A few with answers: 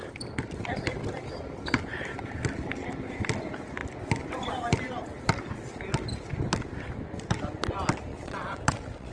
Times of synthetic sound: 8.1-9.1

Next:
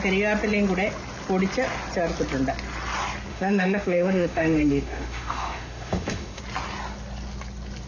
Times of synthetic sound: 3.3-6.4